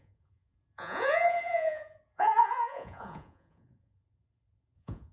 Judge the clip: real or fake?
fake